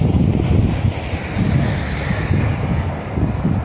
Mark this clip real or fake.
real